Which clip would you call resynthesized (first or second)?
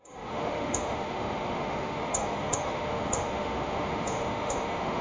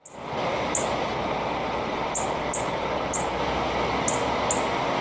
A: first